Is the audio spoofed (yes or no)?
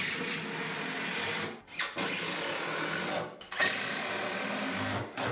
no